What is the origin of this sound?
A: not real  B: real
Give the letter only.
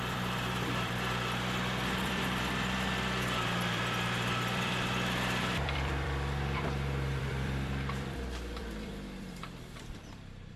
A